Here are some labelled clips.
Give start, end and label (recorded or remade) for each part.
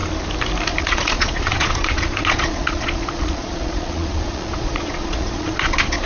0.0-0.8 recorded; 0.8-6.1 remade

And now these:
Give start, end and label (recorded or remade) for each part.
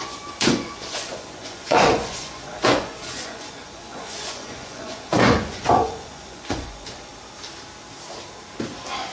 0.0-7.1 remade; 7.1-9.1 recorded